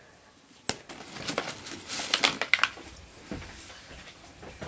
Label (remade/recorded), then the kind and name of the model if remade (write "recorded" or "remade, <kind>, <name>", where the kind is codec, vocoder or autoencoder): recorded